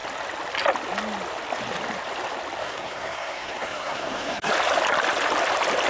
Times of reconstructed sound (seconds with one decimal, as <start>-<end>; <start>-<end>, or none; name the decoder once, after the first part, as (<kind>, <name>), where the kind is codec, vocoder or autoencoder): 2.6-4.5 (codec, SNAC)